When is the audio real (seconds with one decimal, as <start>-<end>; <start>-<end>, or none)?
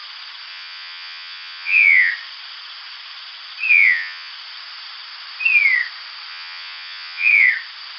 0.0-0.5; 2.1-3.7; 4.3-6.3; 7.5-8.0